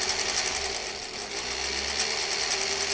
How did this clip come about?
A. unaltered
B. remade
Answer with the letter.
A